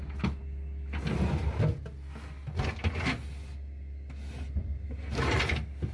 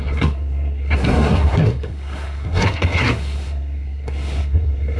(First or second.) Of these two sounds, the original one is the first